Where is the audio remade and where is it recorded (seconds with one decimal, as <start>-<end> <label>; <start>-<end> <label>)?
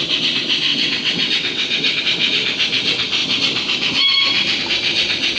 0.0-0.7 recorded; 0.7-2.0 remade; 2.0-5.4 recorded